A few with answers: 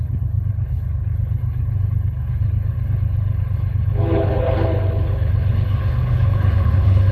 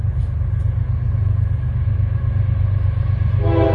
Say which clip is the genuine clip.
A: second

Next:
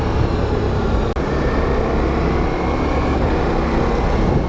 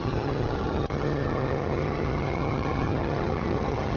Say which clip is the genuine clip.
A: first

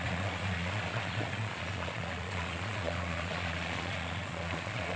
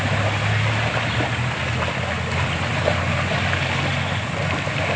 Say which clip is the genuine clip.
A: second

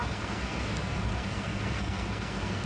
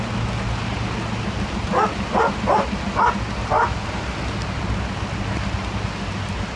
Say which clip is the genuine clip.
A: second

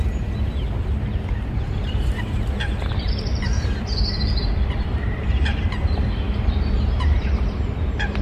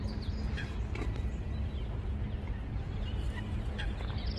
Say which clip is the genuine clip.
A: second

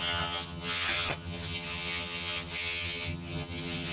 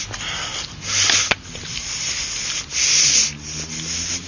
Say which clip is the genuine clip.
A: second